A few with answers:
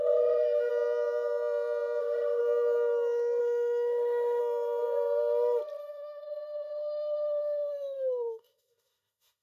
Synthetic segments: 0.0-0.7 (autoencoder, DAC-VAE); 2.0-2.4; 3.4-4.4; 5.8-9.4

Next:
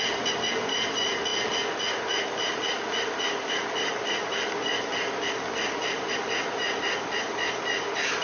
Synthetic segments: none